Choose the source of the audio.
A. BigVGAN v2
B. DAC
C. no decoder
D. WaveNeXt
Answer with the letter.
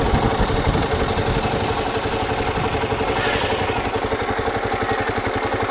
C